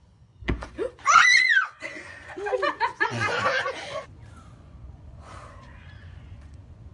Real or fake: fake